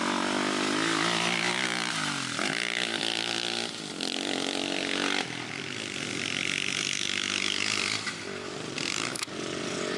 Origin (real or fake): real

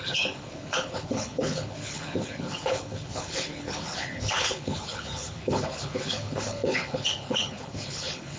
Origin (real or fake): fake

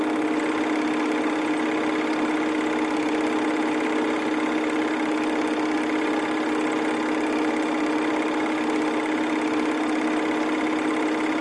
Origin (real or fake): real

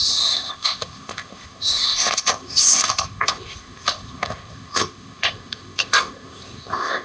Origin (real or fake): fake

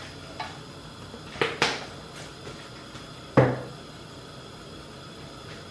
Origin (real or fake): real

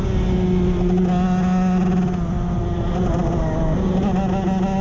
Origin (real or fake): real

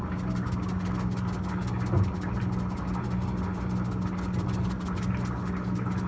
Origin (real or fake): real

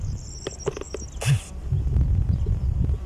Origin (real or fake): real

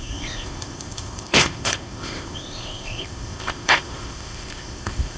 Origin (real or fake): fake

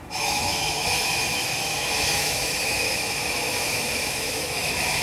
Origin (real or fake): fake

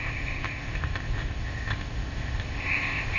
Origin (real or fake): fake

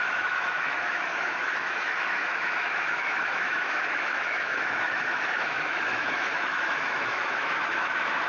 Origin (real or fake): fake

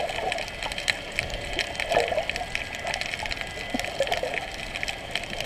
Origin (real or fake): real